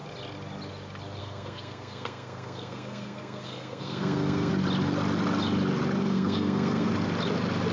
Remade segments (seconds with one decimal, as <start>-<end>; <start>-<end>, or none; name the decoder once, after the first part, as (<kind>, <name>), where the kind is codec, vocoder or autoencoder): 1.2-4.5 (codec, SNAC); 6.0-6.9